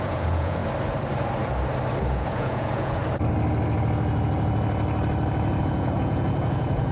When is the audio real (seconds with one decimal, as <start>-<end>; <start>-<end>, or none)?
0.6-2.0; 3.0-5.6